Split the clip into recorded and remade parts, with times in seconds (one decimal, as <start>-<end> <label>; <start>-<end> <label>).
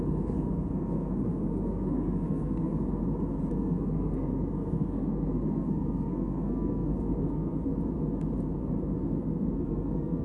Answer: 0.0-2.7 remade; 2.7-3.5 recorded; 3.5-7.7 remade; 7.7-8.6 recorded; 8.6-10.2 remade